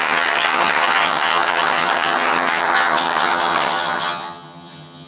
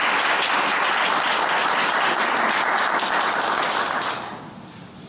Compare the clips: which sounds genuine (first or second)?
second